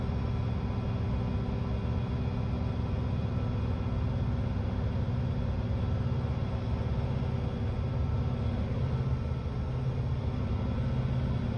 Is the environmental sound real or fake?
real